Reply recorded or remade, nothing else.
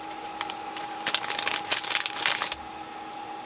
recorded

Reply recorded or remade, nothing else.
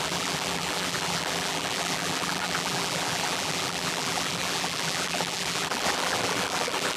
remade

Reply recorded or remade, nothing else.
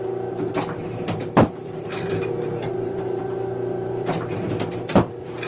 remade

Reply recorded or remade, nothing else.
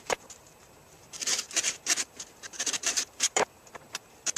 remade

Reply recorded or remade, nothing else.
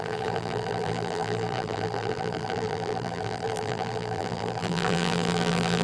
remade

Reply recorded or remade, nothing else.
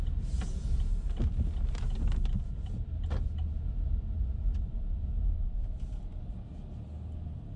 recorded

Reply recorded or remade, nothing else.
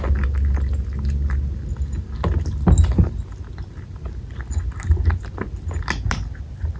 recorded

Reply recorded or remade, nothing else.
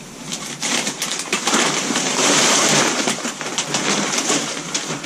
remade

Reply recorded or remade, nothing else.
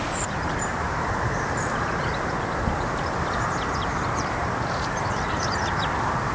remade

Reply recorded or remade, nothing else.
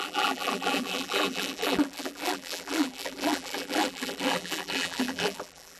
remade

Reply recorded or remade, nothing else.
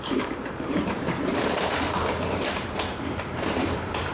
remade